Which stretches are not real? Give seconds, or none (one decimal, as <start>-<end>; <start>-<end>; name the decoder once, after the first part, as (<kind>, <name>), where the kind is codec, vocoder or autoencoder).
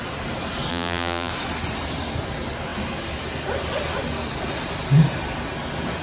0.7-1.3 (vocoder, BigVGAN v2)